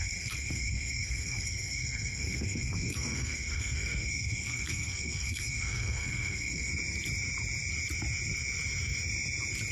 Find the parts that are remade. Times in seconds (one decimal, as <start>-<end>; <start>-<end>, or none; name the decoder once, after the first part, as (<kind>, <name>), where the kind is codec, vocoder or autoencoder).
0.0-6.7 (codec, SNAC)